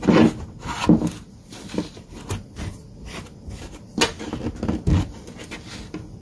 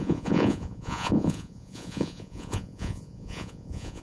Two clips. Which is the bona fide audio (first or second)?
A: first